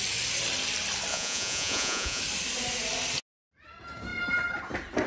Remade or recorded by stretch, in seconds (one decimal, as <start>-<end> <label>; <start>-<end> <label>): 0.0-1.1 recorded; 1.1-2.2 remade; 2.2-5.1 recorded